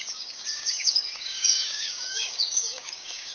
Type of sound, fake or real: fake